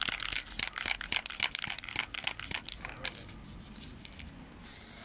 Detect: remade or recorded recorded